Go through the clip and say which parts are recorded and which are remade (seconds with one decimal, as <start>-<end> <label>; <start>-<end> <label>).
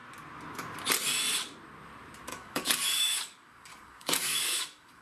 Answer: 0.0-2.3 recorded; 2.3-5.0 remade